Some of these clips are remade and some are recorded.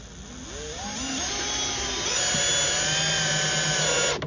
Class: recorded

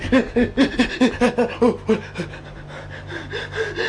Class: recorded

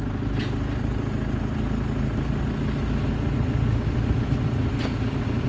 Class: recorded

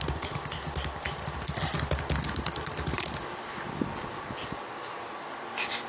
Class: recorded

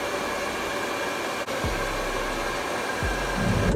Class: recorded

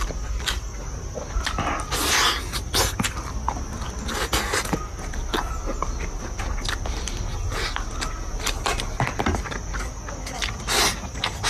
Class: recorded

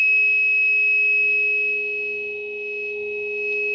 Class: recorded